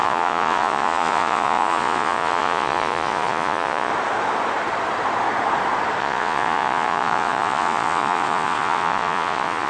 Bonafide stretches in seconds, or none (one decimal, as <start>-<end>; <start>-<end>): 3.9-6.0